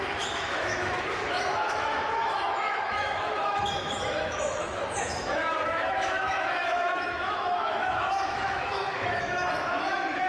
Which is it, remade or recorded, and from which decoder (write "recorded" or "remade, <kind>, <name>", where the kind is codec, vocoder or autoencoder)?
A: remade, autoencoder, DAC-VAE